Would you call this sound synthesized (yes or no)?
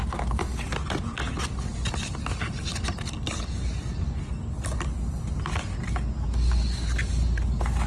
no